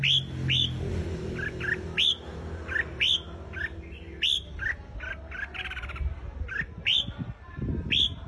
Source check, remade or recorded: recorded